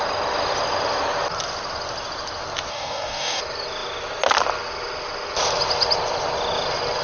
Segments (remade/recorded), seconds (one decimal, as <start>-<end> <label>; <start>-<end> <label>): 0.0-2.7 recorded; 2.7-3.4 remade; 3.4-7.0 recorded